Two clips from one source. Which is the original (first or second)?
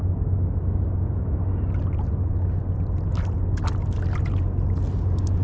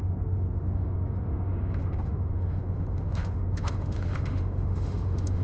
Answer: first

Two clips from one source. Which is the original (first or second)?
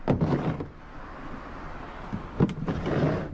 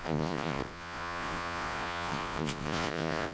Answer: first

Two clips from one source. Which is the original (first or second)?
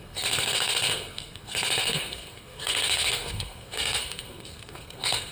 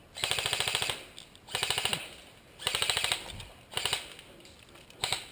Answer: second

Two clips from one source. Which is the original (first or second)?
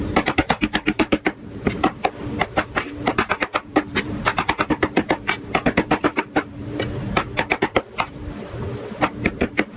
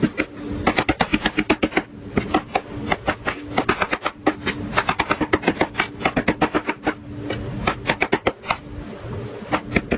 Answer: second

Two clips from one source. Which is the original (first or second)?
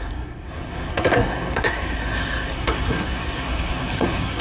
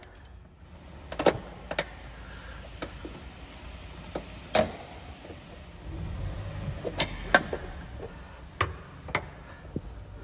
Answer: second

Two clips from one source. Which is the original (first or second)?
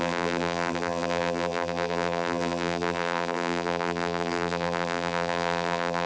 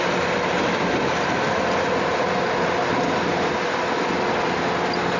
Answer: second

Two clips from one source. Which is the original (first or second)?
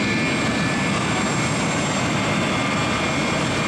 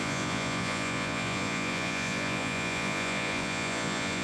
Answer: first